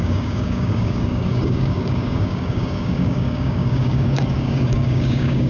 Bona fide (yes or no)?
no